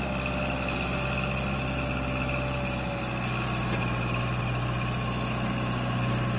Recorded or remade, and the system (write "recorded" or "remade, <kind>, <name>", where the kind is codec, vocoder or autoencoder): recorded